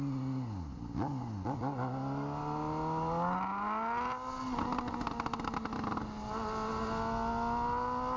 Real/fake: real